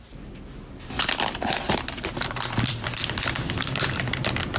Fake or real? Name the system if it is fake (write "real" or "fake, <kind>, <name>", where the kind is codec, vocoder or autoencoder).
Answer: fake, vocoder, BigVGAN v2